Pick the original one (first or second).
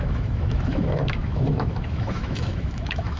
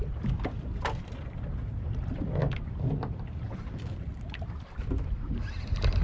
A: second